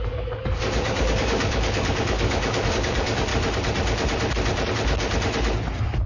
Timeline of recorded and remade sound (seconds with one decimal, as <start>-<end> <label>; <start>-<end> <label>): 0.0-3.3 remade; 3.3-6.1 recorded